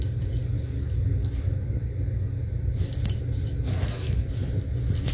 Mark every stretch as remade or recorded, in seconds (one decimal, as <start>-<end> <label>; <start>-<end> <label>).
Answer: 0.0-3.7 recorded; 3.7-4.3 remade; 4.3-5.1 recorded

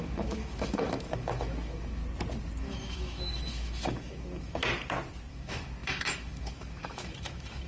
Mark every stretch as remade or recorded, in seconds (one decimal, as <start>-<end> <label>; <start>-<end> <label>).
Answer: 0.0-2.0 remade; 2.0-2.6 recorded; 2.6-4.6 remade; 4.6-5.3 recorded; 5.3-7.7 remade

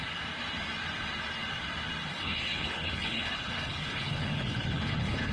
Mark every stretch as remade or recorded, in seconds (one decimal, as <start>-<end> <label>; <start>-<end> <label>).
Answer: 0.0-2.1 recorded; 2.1-5.3 remade

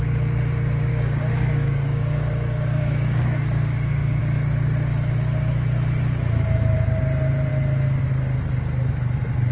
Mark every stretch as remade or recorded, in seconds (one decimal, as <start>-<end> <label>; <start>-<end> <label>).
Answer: 0.0-0.9 recorded; 0.9-4.2 remade; 4.2-9.5 recorded

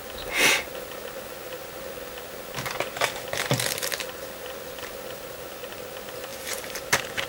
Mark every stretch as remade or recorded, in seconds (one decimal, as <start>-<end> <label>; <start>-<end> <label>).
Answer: 0.0-6.3 recorded; 6.3-7.3 remade

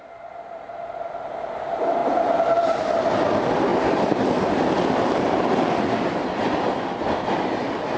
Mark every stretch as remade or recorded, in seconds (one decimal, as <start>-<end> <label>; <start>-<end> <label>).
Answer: 0.0-2.0 recorded; 2.0-3.1 remade; 3.1-3.7 recorded; 3.7-4.7 remade; 4.7-8.0 recorded

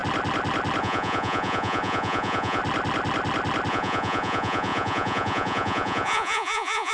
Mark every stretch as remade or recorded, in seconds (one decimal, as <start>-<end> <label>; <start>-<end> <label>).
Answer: 0.0-0.8 recorded; 0.8-2.6 remade; 2.6-3.7 recorded; 3.7-6.9 remade

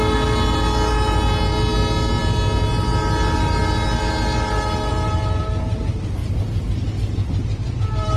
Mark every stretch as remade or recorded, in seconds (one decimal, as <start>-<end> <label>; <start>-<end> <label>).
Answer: 0.0-4.9 recorded; 4.9-5.4 remade; 5.4-6.2 recorded; 6.2-8.2 remade